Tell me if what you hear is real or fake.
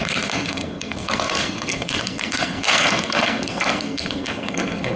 fake